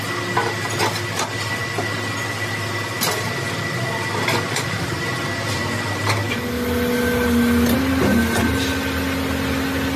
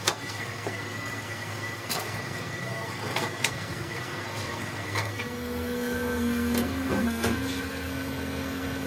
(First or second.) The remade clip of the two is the second